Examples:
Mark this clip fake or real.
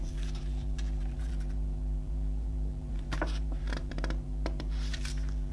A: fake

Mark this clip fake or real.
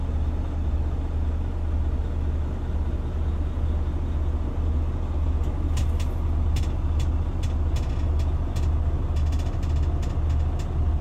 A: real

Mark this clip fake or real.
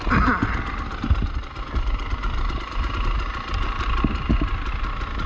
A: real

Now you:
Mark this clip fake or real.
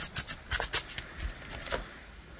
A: real